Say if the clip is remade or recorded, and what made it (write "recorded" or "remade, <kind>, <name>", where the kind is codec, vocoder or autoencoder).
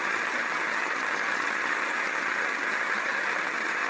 remade, vocoder, HiFi-GAN